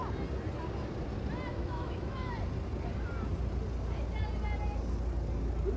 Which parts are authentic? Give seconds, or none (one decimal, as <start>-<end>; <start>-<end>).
0.0-1.5; 2.3-5.8